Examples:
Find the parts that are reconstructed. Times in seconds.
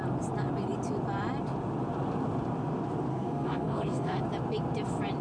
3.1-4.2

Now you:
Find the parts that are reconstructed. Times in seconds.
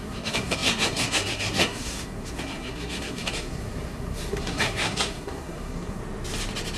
0.0-6.0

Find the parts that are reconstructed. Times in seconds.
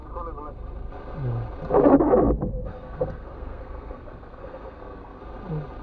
2.6-5.2